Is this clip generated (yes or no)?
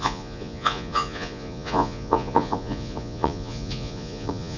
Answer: yes